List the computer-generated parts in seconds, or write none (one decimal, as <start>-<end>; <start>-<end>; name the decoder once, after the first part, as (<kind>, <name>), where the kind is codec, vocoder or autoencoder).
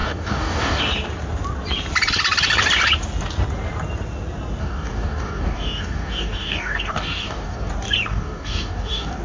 0.0-0.8 (codec, DAC); 4.6-7.7; 8.1-9.2